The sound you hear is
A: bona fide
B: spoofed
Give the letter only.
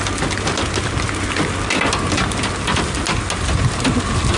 A